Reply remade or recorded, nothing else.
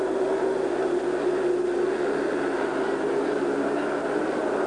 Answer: recorded